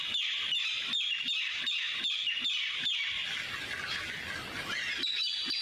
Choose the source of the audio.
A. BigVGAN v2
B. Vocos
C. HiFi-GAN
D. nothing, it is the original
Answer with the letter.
D